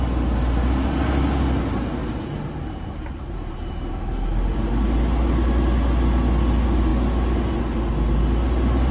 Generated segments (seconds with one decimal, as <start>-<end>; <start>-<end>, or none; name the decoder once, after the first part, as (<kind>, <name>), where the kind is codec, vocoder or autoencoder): 2.0-4.7 (vocoder, BigVGAN v2)